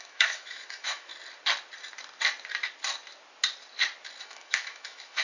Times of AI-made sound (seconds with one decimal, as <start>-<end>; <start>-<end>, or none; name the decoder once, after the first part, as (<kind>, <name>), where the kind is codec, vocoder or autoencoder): 0.0-1.1 (autoencoder, DAC-VAE); 4.2-5.2